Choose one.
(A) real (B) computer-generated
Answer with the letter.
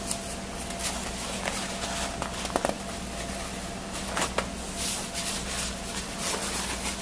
A